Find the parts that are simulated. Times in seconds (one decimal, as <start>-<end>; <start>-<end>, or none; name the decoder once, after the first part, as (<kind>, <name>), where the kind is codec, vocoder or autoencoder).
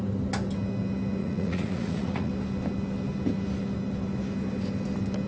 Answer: 1.2-2.3 (vocoder, Vocos)